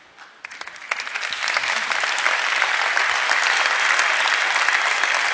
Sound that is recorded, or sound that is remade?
recorded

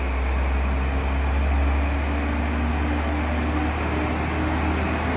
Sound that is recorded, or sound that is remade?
recorded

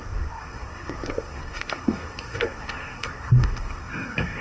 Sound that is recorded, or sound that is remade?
remade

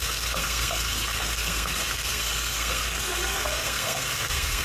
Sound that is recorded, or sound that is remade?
remade